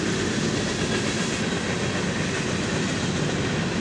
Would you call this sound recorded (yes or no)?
yes